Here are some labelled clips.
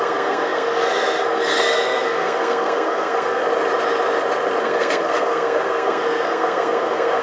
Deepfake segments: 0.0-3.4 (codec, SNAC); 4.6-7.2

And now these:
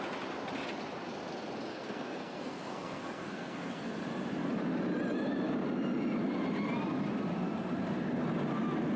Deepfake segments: 1.7-3.9 (codec, SNAC)

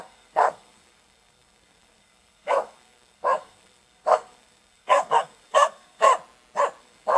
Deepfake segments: 0.0-6.1 (codec, SNAC); 6.8-7.2

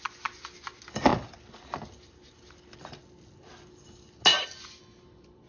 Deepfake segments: none